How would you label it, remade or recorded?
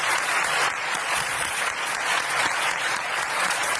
remade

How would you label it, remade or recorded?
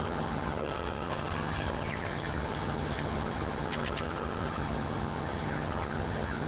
remade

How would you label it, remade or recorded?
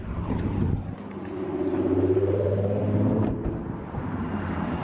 remade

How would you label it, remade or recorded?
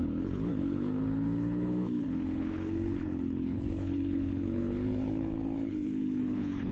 remade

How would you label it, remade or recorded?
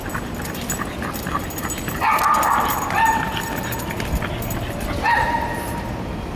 recorded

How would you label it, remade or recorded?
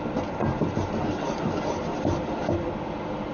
recorded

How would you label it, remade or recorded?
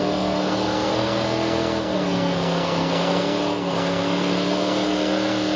remade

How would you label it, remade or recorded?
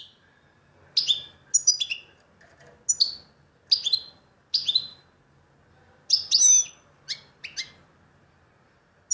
recorded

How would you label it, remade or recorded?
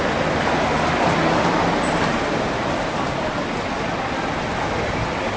recorded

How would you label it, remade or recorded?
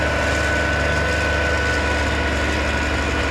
recorded